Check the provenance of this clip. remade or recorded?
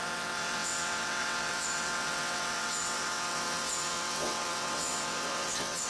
remade